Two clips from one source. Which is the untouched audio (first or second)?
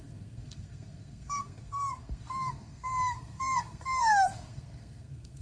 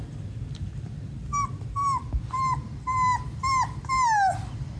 second